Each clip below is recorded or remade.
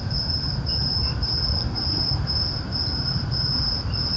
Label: remade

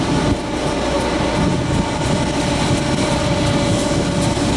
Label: recorded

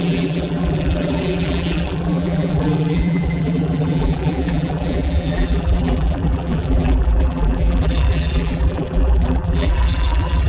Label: remade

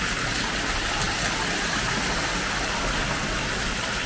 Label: recorded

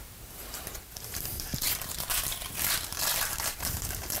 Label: remade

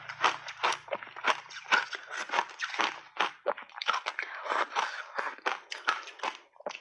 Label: recorded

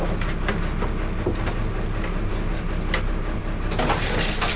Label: recorded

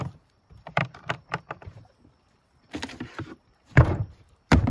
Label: remade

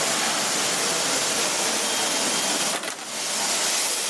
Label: recorded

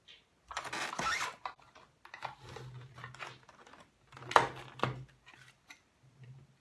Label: recorded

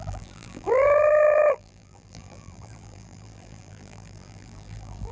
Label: remade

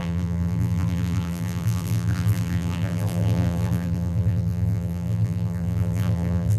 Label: remade